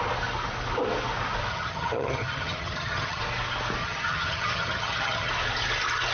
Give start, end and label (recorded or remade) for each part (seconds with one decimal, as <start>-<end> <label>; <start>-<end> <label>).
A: 0.0-1.5 recorded; 1.5-3.2 remade; 3.2-3.8 recorded; 3.8-5.3 remade; 5.3-6.1 recorded